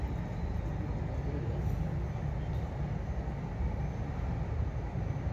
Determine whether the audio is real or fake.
real